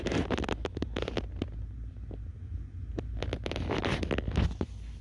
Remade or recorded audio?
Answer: recorded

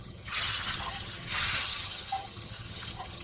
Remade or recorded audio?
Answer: remade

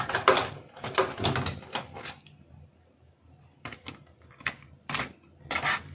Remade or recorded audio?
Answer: remade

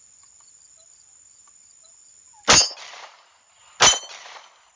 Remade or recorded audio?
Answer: recorded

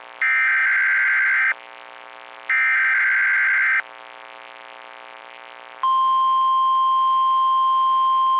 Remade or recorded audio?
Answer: recorded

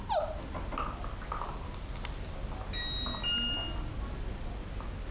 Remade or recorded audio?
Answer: recorded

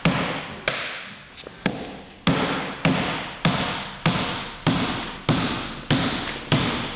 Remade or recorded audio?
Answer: recorded